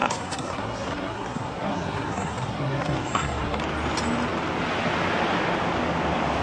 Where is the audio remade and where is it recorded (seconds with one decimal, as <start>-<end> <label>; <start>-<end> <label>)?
0.0-3.6 remade; 3.6-6.4 recorded